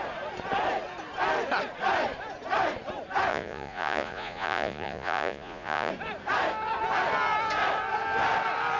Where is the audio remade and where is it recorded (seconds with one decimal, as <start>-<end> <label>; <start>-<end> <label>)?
0.0-3.3 recorded; 3.3-5.9 remade; 5.9-8.8 recorded